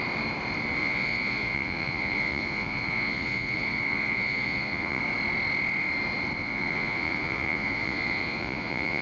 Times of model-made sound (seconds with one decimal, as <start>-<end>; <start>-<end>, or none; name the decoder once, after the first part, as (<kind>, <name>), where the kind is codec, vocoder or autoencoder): 0.8-5.0 (vocoder, Vocos); 6.4-9.0